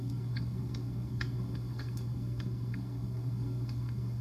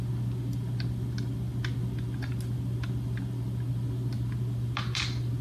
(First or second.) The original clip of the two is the second